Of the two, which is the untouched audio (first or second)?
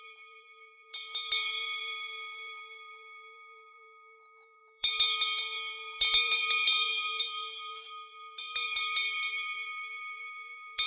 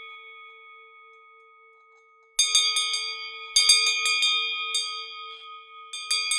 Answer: second